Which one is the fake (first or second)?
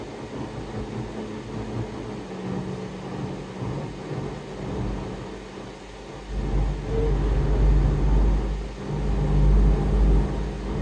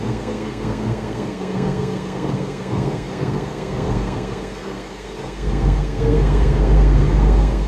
second